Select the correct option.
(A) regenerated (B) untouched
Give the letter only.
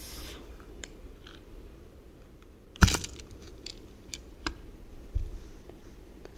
A